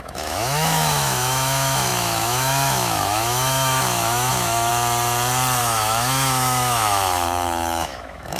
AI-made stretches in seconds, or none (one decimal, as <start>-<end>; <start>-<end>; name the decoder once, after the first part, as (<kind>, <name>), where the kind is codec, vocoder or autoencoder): 0.0-4.7 (autoencoder, DAC-VAE); 5.6-8.4